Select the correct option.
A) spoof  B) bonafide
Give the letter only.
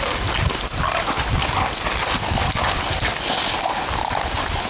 B